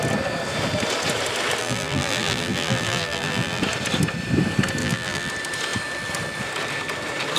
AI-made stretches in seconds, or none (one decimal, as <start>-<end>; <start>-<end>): 1.6-3.6; 4.8-5.3